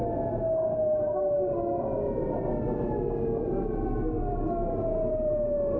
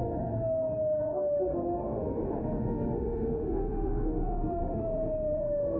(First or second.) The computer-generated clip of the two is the second